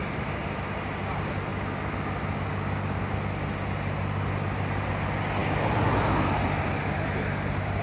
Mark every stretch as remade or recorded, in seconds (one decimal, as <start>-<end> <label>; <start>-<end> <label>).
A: 0.0-7.8 recorded